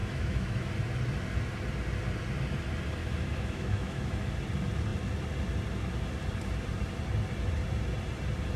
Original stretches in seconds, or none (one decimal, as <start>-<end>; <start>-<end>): 0.7-3.0; 4.3-8.6